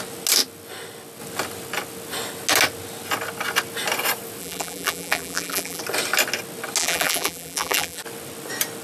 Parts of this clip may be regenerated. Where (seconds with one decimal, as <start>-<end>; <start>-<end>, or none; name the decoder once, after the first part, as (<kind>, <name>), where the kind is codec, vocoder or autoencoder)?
4.4-5.8 (vocoder, BigVGAN v2); 6.8-8.0

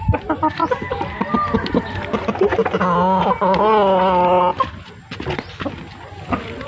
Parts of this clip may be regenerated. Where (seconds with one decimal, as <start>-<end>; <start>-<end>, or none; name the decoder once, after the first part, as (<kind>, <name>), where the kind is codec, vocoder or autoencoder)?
none

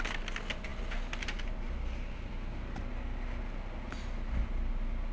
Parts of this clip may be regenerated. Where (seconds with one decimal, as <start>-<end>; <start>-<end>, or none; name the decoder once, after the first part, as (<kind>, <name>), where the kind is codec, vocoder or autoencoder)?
none

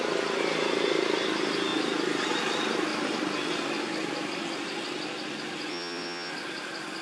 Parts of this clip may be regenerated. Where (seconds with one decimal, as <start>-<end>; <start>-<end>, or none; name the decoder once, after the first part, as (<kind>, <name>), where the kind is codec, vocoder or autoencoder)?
5.7-6.3 (vocoder, WaveNeXt)

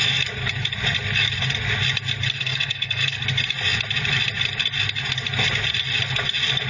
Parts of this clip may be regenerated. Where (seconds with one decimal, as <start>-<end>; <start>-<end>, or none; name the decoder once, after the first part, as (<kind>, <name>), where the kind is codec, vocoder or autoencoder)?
2.4-3.2 (codec, SNAC)

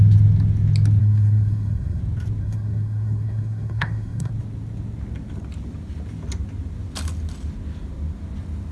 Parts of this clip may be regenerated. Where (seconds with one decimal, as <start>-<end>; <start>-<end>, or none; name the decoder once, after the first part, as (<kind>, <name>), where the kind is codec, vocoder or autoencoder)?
1.0-2.0 (codec, SNAC); 2.4-4.3

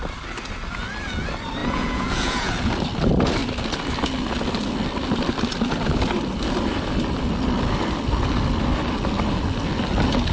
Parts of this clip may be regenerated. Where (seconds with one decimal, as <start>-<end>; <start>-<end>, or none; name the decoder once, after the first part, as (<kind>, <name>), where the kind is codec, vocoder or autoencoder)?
1.6-2.7 (vocoder, Vocos)